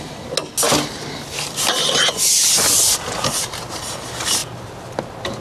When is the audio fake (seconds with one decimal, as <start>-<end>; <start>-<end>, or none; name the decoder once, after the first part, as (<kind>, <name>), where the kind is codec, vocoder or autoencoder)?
none